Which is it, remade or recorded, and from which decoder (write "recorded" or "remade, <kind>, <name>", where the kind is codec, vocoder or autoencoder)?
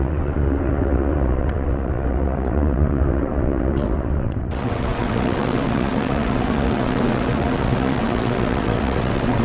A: remade, vocoder, WaveNeXt